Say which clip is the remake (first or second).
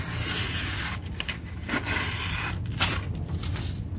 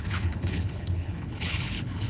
second